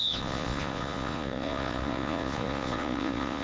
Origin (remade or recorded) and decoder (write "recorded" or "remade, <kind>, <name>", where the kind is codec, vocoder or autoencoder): remade, vocoder, Vocos